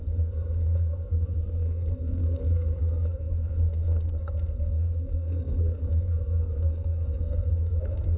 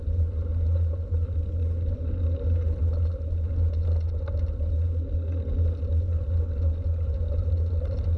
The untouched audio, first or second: second